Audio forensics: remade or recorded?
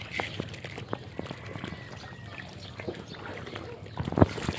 recorded